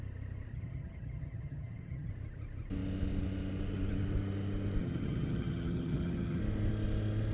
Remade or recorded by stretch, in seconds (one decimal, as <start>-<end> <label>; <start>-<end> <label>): 0.0-0.5 recorded; 0.5-2.1 remade; 2.1-4.8 recorded; 4.8-6.4 remade; 6.4-7.3 recorded